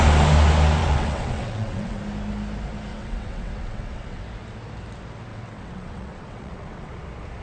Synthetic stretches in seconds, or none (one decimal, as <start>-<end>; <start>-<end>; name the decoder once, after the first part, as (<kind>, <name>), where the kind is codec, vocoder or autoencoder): 0.8-2.0 (vocoder, WaveNeXt); 2.9-4.2; 5.3-6.9